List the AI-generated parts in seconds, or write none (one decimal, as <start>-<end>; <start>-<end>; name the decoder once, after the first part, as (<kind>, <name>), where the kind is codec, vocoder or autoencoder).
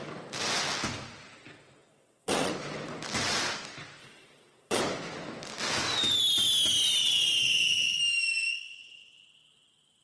1.9-2.5 (vocoder, WaveNeXt); 4.0-4.8; 7.0-8.0